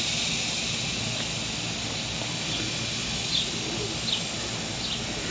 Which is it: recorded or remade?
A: recorded